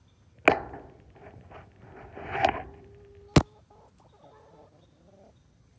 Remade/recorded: recorded